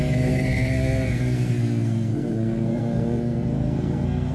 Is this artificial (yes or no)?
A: yes